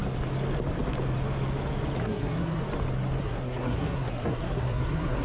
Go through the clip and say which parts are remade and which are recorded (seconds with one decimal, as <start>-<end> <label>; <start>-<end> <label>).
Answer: 0.0-2.0 recorded; 2.0-2.6 remade; 2.6-3.2 recorded; 3.2-5.2 remade